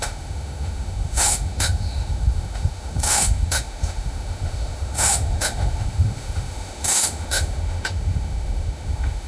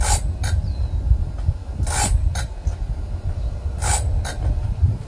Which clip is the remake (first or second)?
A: first